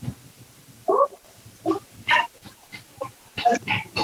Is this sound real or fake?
fake